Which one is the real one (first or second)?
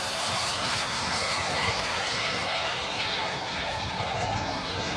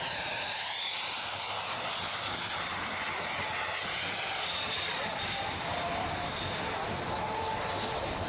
second